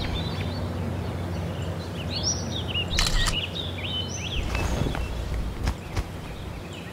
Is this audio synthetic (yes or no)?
no